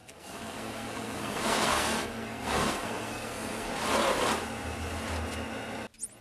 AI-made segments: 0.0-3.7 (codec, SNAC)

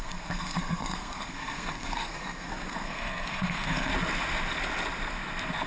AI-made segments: 0.0-3.9 (codec, SNAC)

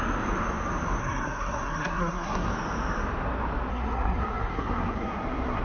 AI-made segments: 1.0-2.5 (codec, SNAC); 3.7-5.6

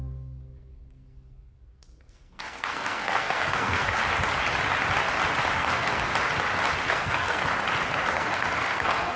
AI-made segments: 0.0-4.0 (codec, SNAC); 5.5-6.1; 6.9-7.4; 8.1-9.2

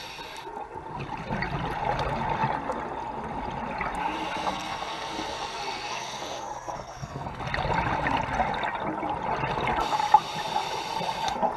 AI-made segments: 4.5-7.4 (codec, SNAC)

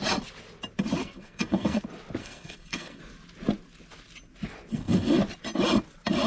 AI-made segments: 1.0-1.8 (codec, SNAC); 2.2-3.0; 4.7-5.2

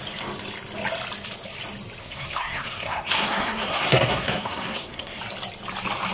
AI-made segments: 2.0-5.2 (codec, SNAC)

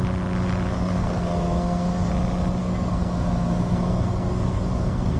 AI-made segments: 0.7-2.1 (codec, SNAC); 2.6-5.2